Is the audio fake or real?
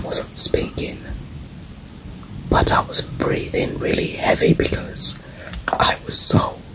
real